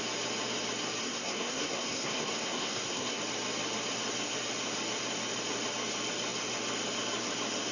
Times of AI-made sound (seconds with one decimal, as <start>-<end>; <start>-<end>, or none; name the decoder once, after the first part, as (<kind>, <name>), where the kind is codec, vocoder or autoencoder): 1.0-3.2 (codec, SNAC)